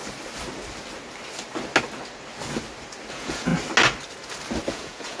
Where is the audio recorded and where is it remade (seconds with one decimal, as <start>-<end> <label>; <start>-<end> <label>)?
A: 0.0-3.1 recorded; 3.1-3.5 remade; 3.5-4.7 recorded; 4.7-5.2 remade